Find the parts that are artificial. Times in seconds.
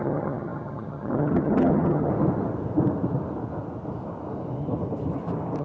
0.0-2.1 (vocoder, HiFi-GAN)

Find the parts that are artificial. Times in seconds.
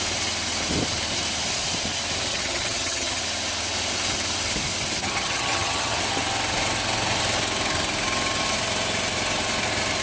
2.3-3.2 (vocoder, HiFi-GAN); 5.0-6.0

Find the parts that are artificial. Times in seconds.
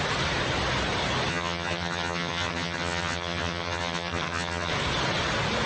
1.3-4.7 (vocoder, HiFi-GAN)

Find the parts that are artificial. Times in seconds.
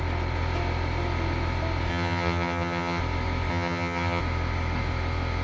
1.9-3.0 (vocoder, HiFi-GAN); 3.5-4.2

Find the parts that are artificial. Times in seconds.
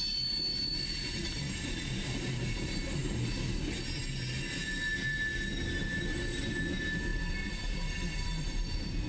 none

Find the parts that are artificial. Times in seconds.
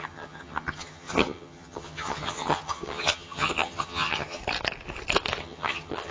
0.0-4.4 (vocoder, HiFi-GAN); 5.4-6.1